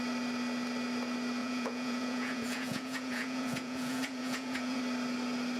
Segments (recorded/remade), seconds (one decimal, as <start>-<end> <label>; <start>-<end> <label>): 0.0-1.4 recorded; 1.4-4.8 remade; 4.8-5.6 recorded